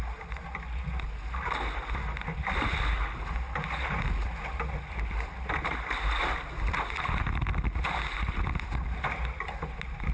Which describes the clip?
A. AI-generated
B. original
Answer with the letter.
B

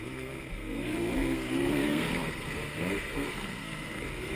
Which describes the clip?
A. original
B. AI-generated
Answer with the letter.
B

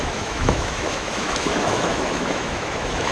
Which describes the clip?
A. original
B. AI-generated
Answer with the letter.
B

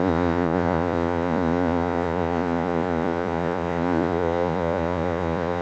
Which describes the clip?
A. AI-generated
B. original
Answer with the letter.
A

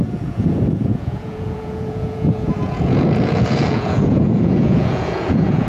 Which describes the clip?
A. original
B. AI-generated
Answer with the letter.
B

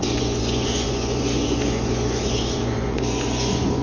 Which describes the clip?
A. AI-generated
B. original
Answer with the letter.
A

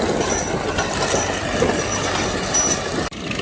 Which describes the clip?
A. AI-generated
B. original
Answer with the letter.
B